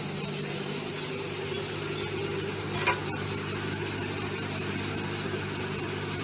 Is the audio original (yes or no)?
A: yes